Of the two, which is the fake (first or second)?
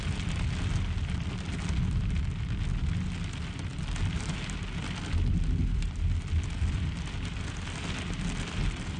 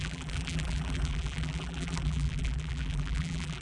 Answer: second